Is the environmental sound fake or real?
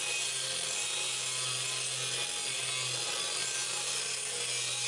real